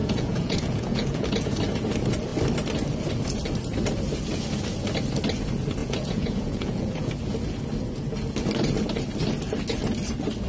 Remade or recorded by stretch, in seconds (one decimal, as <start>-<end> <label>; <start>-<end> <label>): 0.0-1.6 remade; 1.6-5.8 recorded; 5.8-7.1 remade; 7.1-10.5 recorded